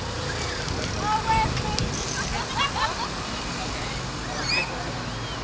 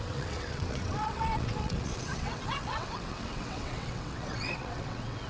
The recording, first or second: first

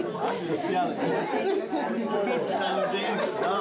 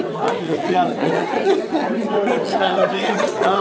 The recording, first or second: first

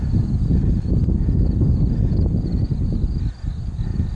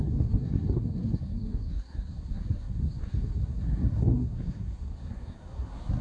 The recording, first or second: first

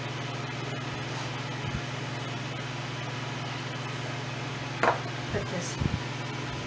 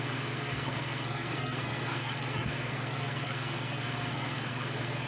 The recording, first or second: first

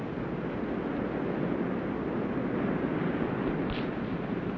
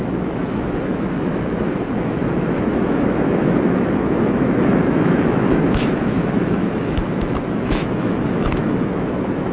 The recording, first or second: first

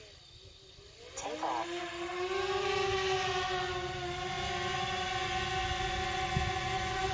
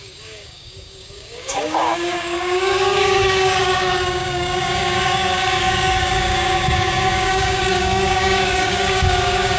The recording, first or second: first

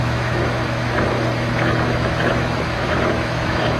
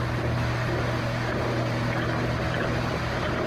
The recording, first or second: second